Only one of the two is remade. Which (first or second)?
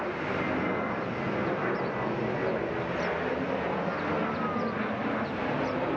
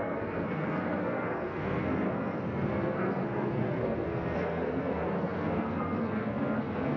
second